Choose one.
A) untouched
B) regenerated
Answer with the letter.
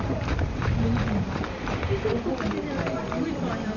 A